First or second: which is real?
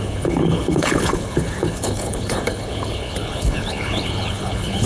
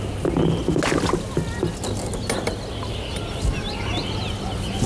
second